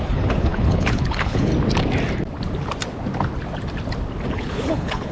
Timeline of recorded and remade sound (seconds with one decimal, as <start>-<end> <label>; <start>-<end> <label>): 0.0-1.5 remade; 1.5-4.3 recorded; 4.3-5.1 remade